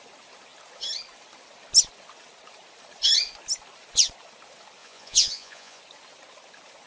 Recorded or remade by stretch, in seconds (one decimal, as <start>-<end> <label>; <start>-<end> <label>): 0.0-4.8 recorded; 4.8-5.8 remade; 5.8-6.9 recorded